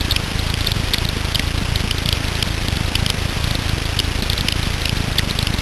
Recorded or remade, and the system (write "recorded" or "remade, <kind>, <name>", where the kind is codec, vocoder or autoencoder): recorded